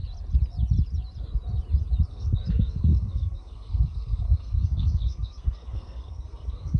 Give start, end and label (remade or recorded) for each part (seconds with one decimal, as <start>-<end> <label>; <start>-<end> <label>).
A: 0.0-2.1 recorded; 2.1-6.8 remade